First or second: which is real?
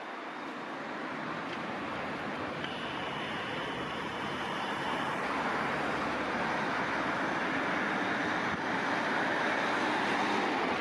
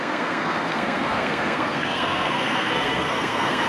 first